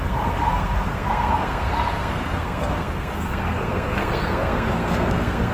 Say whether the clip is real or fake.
fake